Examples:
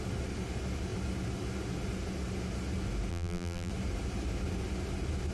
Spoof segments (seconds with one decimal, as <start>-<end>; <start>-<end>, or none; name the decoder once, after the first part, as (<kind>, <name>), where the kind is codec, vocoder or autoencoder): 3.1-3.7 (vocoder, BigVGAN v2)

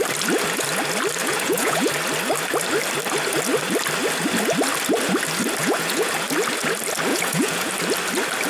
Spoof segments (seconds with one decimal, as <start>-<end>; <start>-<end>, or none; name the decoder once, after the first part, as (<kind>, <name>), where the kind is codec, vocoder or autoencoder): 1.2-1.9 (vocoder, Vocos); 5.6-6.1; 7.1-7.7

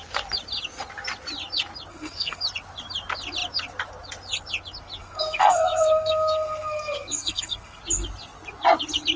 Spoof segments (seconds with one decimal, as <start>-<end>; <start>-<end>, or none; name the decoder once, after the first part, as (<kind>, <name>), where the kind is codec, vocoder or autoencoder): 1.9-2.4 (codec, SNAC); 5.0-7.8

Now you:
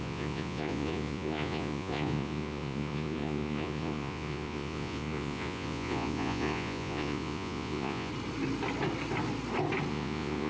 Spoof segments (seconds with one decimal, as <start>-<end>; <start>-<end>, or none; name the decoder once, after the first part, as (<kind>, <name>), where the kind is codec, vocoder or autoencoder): 0.0-8.1 (vocoder, Vocos); 9.9-10.5

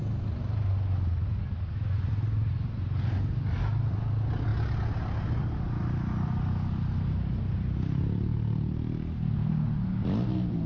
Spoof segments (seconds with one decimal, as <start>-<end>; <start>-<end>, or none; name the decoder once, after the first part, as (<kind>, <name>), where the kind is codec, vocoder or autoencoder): none